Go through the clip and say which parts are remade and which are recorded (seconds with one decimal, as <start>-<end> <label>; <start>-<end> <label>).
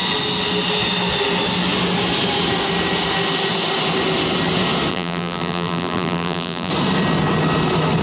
0.0-4.9 recorded; 4.9-6.7 remade; 6.7-8.0 recorded